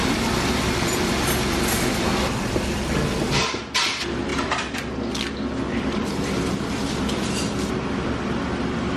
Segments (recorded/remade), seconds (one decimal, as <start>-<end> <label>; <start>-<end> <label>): 0.0-9.0 recorded